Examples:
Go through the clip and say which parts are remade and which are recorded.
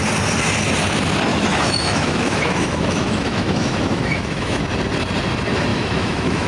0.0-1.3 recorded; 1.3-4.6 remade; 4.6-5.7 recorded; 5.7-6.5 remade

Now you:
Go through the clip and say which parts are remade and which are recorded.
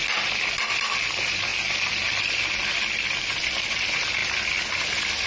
0.0-5.3 recorded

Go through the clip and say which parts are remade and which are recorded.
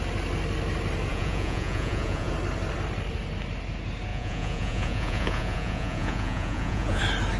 0.0-1.1 recorded; 1.1-2.3 remade; 2.3-4.1 recorded; 4.1-7.0 remade; 7.0-7.4 recorded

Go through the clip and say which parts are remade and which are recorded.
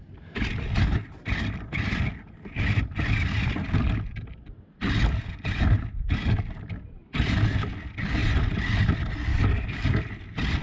0.0-9.3 recorded; 9.3-10.0 remade; 10.0-10.6 recorded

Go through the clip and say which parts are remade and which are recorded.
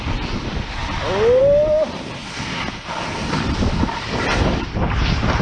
0.0-5.4 recorded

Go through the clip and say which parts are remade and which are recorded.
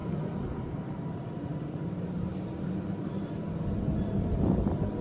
0.0-3.0 remade; 3.0-5.0 recorded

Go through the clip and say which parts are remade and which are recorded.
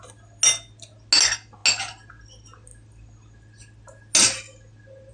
0.0-5.1 recorded